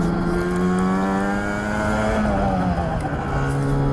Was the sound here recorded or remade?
recorded